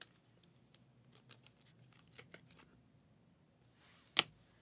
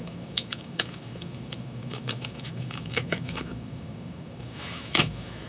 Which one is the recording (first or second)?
first